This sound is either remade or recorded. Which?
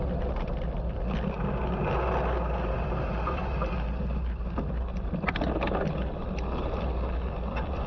recorded